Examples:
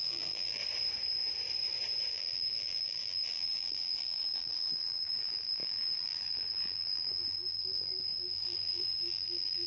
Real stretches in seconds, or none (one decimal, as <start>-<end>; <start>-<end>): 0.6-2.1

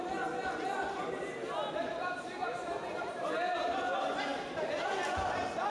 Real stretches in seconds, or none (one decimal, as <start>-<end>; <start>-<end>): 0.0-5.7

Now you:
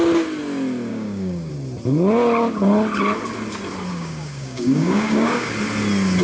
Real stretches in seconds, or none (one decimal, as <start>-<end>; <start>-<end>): 0.0-0.9; 1.5-3.9; 5.5-6.2